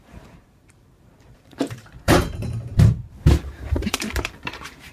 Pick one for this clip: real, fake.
fake